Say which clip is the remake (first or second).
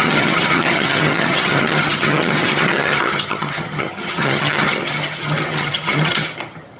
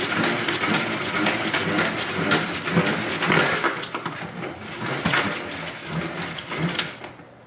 first